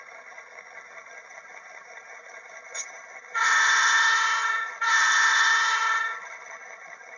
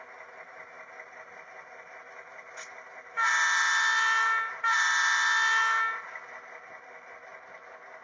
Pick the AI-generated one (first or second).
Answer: first